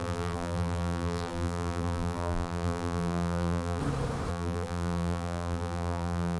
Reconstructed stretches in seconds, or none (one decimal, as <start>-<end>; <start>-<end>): 0.0-3.8; 4.3-6.4